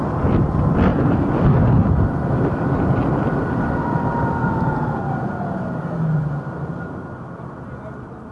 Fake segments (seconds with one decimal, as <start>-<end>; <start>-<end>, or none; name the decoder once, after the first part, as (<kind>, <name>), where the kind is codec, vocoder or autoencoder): none